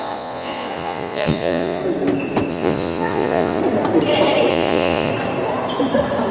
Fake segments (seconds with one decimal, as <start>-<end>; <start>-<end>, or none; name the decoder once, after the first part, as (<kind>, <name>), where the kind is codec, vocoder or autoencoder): 0.0-1.8 (vocoder, Vocos); 2.5-3.6; 4.5-5.1